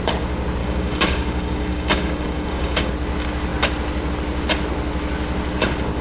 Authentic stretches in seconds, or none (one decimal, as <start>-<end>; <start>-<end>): 0.0-0.6; 2.9-6.0